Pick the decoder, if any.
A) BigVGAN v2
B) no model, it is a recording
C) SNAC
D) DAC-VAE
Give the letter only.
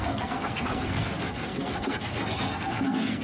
C